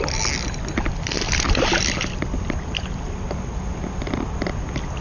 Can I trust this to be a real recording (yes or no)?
yes